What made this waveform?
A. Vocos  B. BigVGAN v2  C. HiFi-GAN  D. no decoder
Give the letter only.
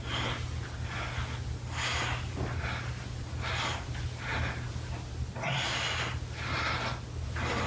D